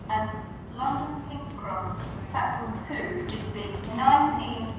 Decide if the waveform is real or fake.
fake